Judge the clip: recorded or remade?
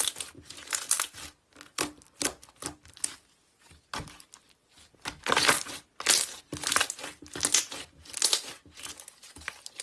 recorded